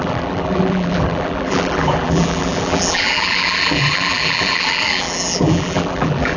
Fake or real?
fake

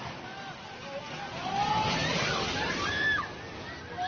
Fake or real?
real